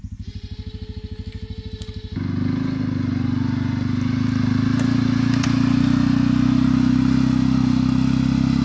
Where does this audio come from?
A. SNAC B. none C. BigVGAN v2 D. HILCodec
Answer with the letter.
B